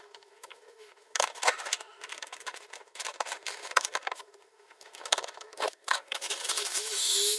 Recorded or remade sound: remade